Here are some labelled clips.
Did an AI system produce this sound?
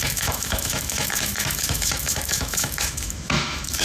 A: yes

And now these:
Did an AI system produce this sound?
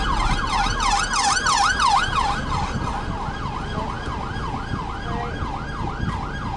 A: no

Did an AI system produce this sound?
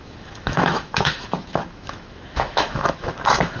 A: yes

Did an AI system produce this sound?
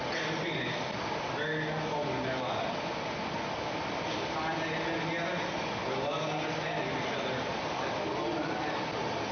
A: no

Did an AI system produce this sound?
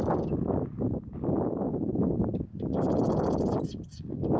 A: no